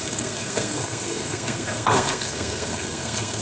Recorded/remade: remade